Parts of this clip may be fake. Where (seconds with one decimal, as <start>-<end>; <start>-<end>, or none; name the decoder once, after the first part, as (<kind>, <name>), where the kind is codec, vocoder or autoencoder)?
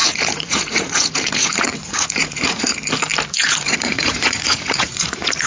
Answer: 0.0-2.7 (vocoder, Vocos); 3.3-5.5